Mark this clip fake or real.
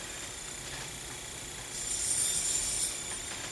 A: fake